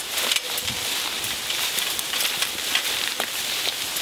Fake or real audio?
fake